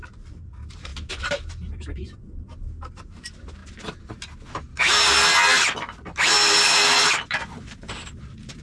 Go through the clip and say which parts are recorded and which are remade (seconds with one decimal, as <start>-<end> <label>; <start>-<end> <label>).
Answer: 0.0-2.0 remade; 2.0-2.9 recorded; 2.9-3.6 remade; 3.6-7.1 recorded; 7.1-8.6 remade